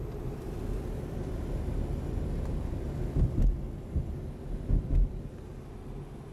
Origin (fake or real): real